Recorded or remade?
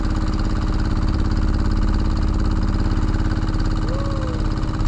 recorded